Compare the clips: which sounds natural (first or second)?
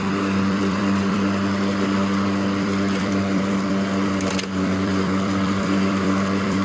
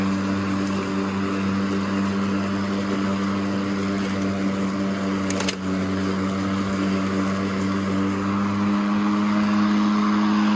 second